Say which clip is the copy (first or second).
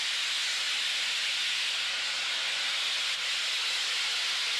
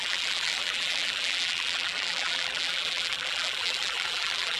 second